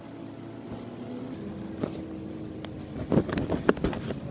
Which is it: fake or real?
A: real